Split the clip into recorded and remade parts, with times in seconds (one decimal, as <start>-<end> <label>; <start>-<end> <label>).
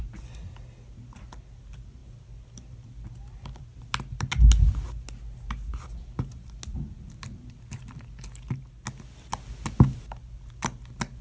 0.0-11.2 recorded